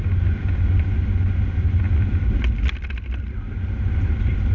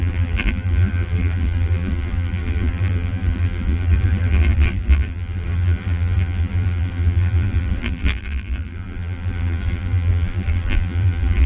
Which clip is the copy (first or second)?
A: second